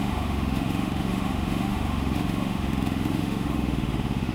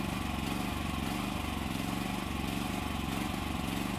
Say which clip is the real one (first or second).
second